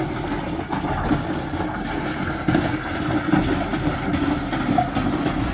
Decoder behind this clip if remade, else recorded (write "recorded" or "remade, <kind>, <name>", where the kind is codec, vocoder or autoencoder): recorded